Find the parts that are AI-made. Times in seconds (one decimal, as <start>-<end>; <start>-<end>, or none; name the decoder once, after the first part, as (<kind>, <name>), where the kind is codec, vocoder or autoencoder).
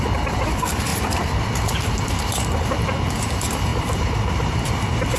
0.0-0.9 (vocoder, BigVGAN v2); 1.9-5.2